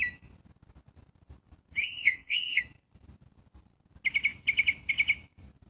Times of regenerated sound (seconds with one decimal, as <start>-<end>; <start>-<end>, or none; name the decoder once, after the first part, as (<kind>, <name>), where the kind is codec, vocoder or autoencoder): 1.8-2.6 (codec, ZipCodec)